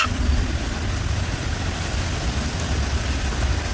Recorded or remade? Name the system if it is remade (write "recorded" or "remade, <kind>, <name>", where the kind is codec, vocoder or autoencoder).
remade, vocoder, BigVGAN v2